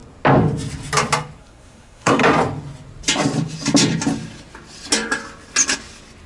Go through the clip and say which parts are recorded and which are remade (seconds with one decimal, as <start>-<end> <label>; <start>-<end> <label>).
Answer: 0.0-1.4 recorded; 1.4-2.2 remade; 2.2-6.3 recorded